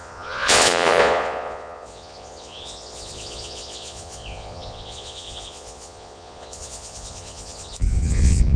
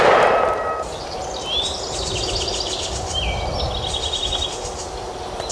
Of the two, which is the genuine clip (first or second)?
second